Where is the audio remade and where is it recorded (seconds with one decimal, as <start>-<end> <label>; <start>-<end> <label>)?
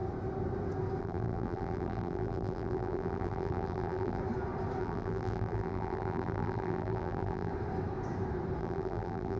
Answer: 0.0-1.0 recorded; 1.0-4.2 remade; 4.2-4.8 recorded; 4.8-7.5 remade; 7.5-8.6 recorded; 8.6-9.4 remade